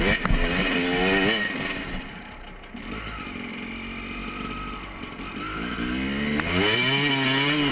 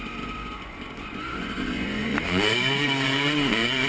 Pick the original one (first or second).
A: first